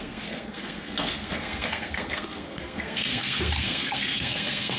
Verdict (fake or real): fake